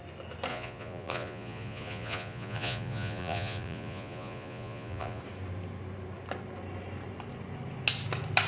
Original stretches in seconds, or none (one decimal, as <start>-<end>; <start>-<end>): 0.0-0.5; 5.2-8.5